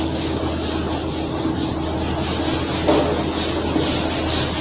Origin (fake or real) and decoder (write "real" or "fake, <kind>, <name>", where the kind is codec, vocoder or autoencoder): real